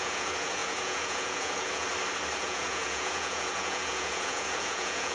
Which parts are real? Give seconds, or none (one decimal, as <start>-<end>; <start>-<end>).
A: 1.9-2.4